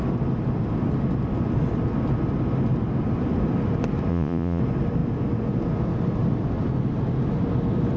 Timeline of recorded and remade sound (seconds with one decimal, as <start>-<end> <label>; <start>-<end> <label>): 0.0-4.1 recorded; 4.1-4.6 remade; 4.6-8.0 recorded